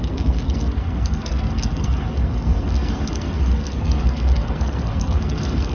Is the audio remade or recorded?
remade